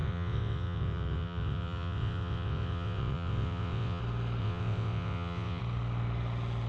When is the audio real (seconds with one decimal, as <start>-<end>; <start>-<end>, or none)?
4.0-4.4; 5.6-6.7